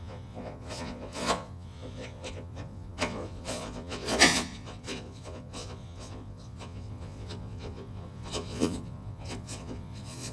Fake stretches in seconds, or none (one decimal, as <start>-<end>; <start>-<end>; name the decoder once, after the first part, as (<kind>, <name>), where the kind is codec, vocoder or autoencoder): 0.0-10.3 (vocoder, Vocos)